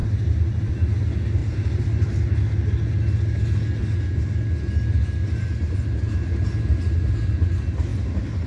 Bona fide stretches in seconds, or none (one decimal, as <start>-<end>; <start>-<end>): 1.0-1.4; 2.3-3.8; 5.8-8.5